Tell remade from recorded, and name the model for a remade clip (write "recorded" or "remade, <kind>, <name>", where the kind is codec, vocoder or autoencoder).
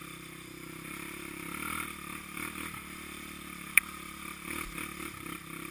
recorded